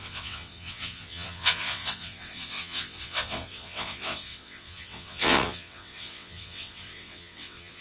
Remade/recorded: remade